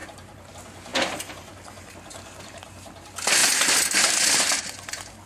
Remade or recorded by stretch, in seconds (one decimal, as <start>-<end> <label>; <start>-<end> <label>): 0.0-0.5 remade; 0.5-3.4 recorded; 3.4-4.4 remade; 4.4-5.3 recorded